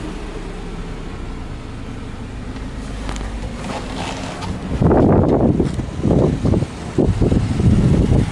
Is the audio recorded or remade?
recorded